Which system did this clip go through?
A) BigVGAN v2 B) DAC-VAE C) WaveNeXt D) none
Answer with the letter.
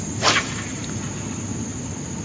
D